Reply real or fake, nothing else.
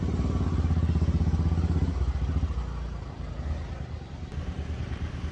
real